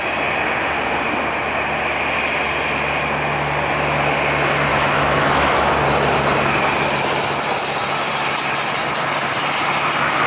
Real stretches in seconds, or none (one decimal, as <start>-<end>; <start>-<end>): 0.0-4.7; 5.7-10.3